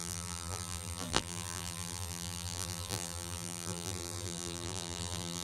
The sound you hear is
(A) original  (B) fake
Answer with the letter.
B